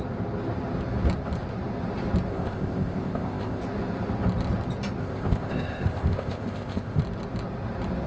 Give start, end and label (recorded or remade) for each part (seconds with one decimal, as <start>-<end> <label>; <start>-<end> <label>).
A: 0.0-2.3 recorded; 2.3-3.6 remade; 3.6-5.0 recorded; 5.0-7.0 remade; 7.0-8.1 recorded